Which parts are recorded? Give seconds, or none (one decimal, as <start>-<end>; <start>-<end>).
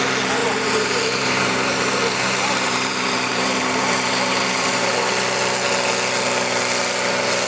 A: 0.0-0.4; 4.9-7.5